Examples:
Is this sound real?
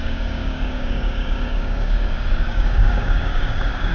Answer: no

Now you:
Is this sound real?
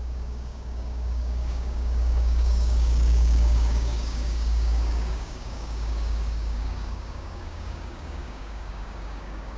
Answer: no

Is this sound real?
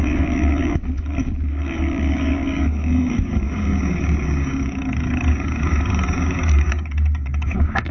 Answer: no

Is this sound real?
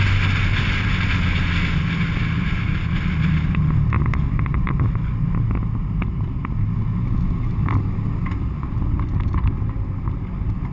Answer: yes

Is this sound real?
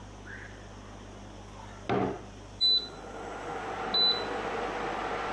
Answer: yes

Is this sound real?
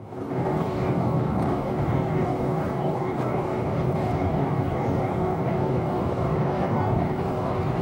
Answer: no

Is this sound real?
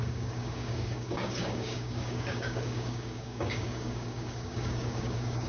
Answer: no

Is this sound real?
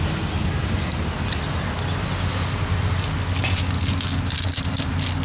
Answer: yes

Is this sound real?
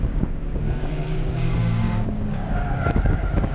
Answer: no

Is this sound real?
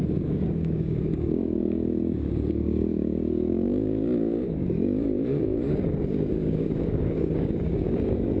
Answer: no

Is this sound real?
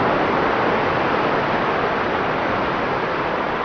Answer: yes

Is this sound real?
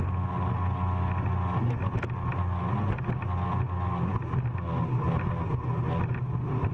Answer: yes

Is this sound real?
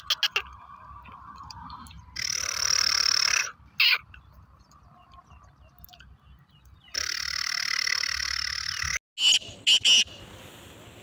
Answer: yes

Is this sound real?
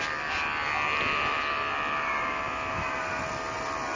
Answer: yes